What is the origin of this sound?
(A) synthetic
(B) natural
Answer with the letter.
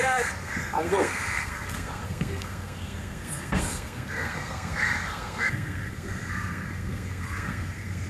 A